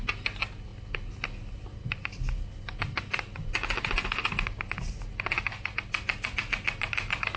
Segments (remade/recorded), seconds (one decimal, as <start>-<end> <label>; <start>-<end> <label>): 0.0-7.4 recorded